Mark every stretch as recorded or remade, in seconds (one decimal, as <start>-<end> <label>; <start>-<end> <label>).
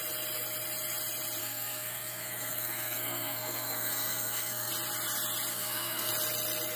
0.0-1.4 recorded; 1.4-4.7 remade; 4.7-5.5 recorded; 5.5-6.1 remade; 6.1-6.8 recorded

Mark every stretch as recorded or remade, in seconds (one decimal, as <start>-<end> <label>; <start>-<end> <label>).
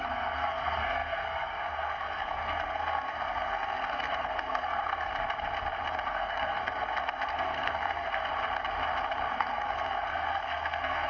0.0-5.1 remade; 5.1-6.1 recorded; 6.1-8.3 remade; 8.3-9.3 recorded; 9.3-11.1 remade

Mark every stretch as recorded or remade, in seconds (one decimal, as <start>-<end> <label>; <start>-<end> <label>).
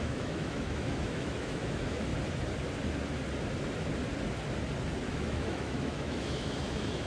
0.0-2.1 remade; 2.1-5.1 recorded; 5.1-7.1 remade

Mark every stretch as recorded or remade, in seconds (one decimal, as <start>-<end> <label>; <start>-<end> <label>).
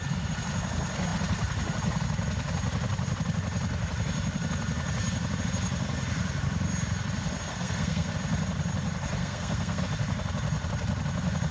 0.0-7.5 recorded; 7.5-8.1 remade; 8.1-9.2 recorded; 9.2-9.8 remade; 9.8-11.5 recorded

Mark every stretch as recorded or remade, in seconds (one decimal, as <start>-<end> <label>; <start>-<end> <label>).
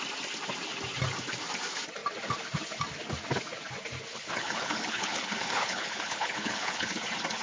0.0-4.1 recorded; 4.1-7.0 remade; 7.0-7.4 recorded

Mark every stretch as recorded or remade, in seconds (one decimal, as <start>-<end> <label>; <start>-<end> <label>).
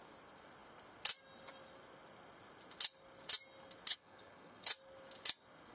0.0-3.9 recorded; 3.9-4.7 remade; 4.7-5.7 recorded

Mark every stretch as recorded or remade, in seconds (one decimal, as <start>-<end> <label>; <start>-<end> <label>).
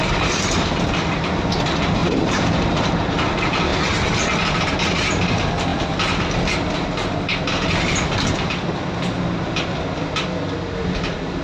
0.0-2.0 recorded; 2.0-2.9 remade; 2.9-11.4 recorded